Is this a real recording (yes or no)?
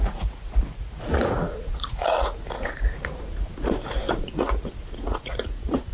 no